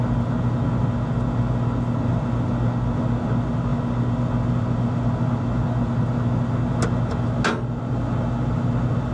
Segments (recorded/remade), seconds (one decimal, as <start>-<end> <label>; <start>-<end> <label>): 0.0-9.1 recorded